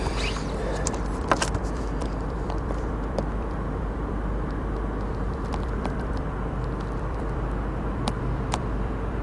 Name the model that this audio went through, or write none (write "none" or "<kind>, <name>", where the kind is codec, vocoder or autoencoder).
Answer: vocoder, BigVGAN v2